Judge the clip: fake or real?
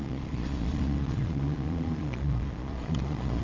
fake